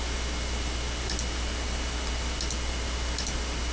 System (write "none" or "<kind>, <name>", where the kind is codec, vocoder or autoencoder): none